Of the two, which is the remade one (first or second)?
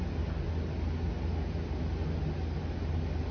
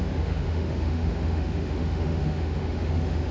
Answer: second